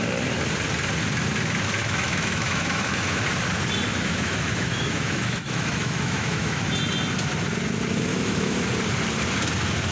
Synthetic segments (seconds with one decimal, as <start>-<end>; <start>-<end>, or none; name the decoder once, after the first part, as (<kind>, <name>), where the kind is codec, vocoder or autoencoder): 1.8-3.2 (autoencoder, DAC-VAE); 3.9-6.6; 8.1-8.7